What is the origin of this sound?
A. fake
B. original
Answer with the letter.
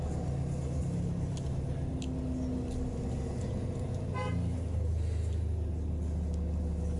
B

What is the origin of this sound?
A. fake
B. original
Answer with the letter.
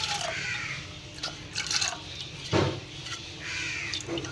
A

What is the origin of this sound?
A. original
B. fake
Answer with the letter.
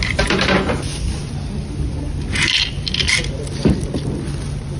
A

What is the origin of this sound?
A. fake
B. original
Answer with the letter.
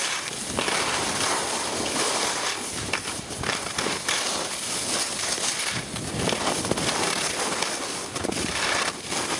B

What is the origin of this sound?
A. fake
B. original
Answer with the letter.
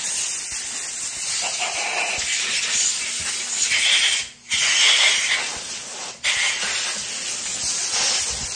B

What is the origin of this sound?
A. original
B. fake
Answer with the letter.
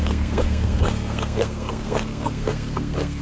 B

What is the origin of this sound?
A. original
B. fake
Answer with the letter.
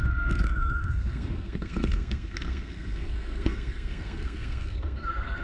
B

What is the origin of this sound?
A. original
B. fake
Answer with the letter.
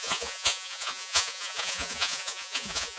B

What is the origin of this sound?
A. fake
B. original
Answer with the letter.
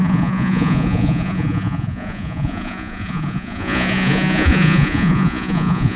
A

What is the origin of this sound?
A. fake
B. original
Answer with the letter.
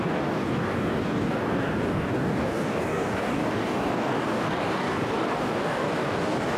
A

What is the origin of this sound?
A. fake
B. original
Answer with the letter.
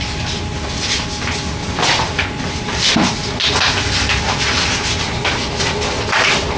B